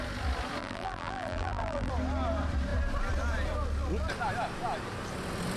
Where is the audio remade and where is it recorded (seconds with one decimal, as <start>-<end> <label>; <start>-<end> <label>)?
0.0-0.6 recorded; 0.6-1.9 remade; 1.9-5.6 recorded